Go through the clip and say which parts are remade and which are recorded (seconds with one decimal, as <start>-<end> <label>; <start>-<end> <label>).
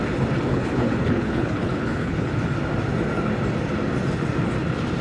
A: 0.0-0.5 recorded; 0.5-2.3 remade; 2.3-5.0 recorded